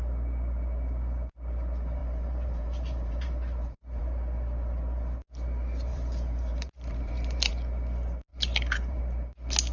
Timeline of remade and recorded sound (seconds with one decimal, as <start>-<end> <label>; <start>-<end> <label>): 0.0-2.0 recorded; 2.0-4.0 remade; 4.0-5.9 recorded; 5.9-7.5 remade; 7.5-8.3 recorded; 8.3-9.0 remade; 9.0-9.7 recorded